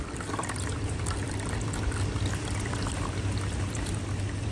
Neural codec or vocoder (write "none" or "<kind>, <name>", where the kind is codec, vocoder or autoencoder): vocoder, BigVGAN v2